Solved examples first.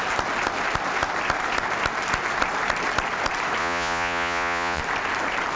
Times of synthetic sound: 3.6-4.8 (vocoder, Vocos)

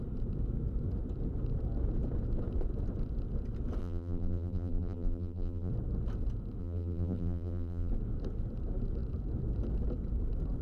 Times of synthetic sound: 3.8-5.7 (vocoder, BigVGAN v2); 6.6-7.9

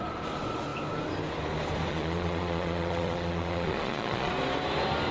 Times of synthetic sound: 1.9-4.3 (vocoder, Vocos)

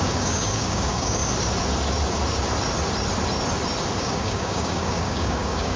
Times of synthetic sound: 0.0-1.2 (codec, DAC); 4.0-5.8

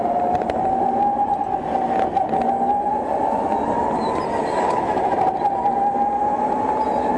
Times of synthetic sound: 2.9-3.6 (vocoder, Vocos)

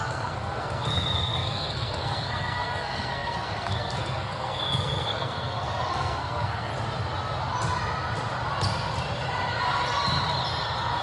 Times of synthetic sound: 0.0-6.7 (codec, SNAC)